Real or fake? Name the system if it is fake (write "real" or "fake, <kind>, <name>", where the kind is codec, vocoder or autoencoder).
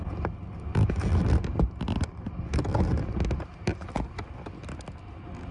real